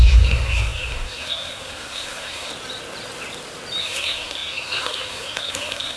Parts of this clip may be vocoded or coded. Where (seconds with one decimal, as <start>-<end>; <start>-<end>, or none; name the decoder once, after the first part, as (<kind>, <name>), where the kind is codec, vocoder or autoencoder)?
0.0-2.5 (codec, SNAC); 3.8-6.0